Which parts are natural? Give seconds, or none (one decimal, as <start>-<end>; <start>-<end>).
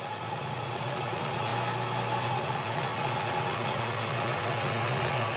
1.5-2.2